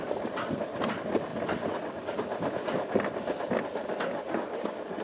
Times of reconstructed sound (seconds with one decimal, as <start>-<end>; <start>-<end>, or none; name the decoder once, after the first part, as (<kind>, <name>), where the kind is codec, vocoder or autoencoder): none